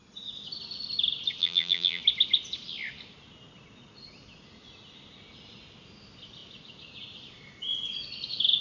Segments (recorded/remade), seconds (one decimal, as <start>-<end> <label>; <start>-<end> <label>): 0.0-1.4 recorded; 1.4-2.0 remade; 2.0-8.6 recorded